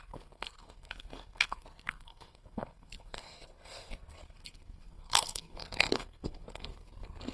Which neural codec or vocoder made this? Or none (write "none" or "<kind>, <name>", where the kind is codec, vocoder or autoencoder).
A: codec, SNAC